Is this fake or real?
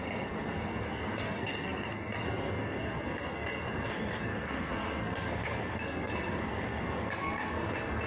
fake